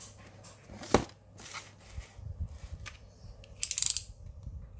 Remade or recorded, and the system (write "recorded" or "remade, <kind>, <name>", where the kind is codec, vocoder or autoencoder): recorded